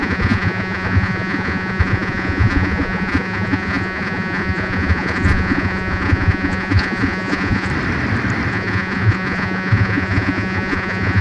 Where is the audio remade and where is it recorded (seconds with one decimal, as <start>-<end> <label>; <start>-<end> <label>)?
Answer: 0.0-7.7 remade; 7.7-8.5 recorded; 8.5-11.2 remade